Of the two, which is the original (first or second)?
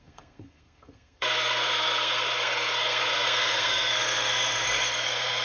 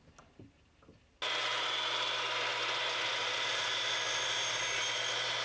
second